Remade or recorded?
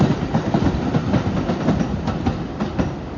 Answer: recorded